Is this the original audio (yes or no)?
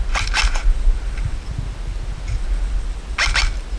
yes